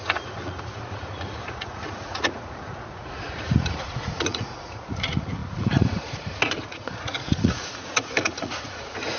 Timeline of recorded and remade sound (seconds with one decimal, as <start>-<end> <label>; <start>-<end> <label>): 0.0-9.2 remade

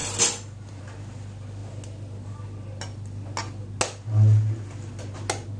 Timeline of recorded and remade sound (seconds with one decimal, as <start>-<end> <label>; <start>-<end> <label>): 0.0-5.6 recorded

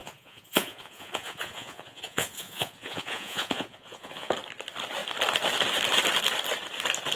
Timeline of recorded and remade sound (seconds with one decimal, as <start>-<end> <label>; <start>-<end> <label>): 0.0-4.3 remade; 4.3-7.2 recorded

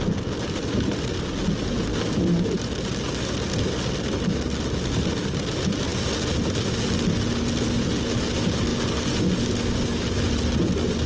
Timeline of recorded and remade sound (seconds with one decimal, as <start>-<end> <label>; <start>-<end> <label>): 0.0-11.1 recorded

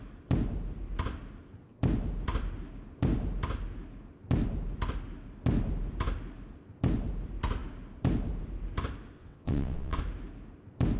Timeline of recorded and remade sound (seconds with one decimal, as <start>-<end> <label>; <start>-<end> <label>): 0.0-9.2 recorded; 9.2-10.0 remade; 10.0-11.0 recorded

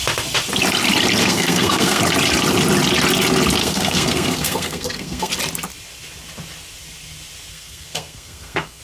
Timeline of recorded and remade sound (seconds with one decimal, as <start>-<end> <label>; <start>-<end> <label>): 0.0-1.2 recorded; 1.2-2.0 remade; 2.0-3.6 recorded; 3.6-5.3 remade; 5.3-7.5 recorded; 7.5-8.8 remade

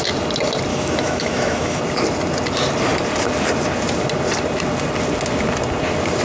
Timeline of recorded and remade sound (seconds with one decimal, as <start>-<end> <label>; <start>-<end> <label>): 0.0-0.7 recorded; 0.7-1.8 remade; 1.8-6.2 recorded